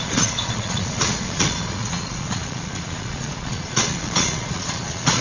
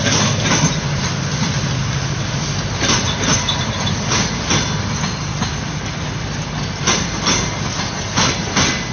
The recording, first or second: second